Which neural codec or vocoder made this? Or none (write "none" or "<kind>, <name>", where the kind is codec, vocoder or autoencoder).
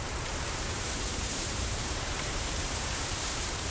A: vocoder, BigVGAN v2